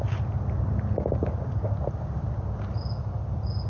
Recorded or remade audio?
recorded